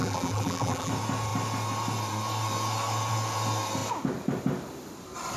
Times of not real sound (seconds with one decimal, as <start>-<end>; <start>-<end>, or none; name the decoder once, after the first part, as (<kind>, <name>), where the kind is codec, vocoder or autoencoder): 0.0-0.9 (vocoder, BigVGAN v2)